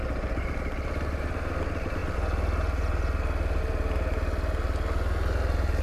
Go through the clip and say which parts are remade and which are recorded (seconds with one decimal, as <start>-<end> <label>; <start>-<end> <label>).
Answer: 0.0-5.8 recorded